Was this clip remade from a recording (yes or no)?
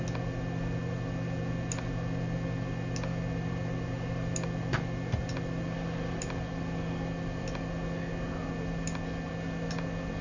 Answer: no